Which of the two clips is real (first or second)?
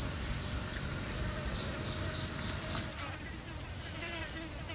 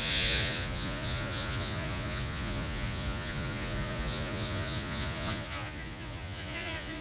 first